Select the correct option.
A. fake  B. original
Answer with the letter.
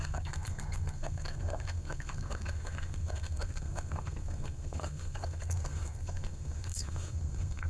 A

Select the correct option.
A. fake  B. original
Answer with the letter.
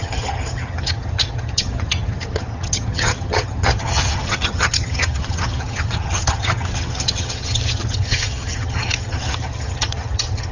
A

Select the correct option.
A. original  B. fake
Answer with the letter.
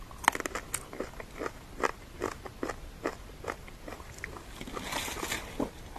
A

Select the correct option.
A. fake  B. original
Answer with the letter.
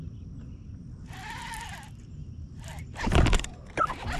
B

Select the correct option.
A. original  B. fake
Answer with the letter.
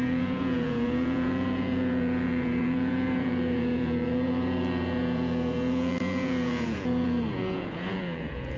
B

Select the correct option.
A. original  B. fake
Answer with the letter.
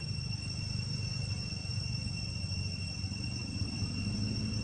A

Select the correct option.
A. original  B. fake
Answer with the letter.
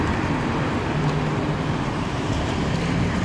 A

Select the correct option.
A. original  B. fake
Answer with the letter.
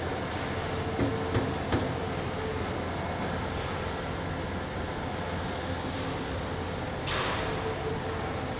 A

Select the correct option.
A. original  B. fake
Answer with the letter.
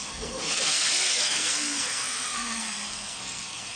B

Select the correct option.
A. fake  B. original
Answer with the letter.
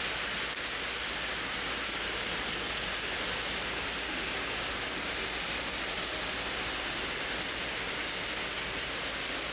B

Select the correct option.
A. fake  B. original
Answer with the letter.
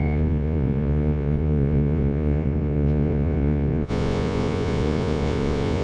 A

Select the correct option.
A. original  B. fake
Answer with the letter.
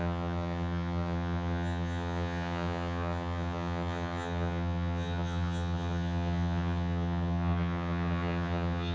B